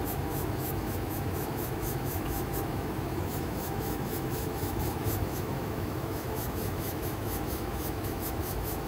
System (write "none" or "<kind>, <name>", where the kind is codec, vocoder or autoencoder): autoencoder, DAC-VAE